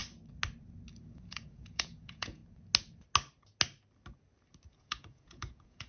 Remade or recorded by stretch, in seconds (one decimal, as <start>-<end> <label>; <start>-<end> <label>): 0.0-1.0 recorded; 1.0-2.4 remade; 2.4-4.7 recorded; 4.7-5.9 remade